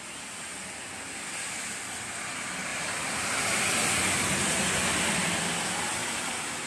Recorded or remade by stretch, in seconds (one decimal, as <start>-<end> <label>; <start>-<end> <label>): 0.0-2.7 recorded; 2.7-3.9 remade; 3.9-6.7 recorded